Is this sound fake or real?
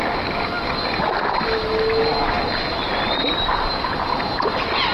real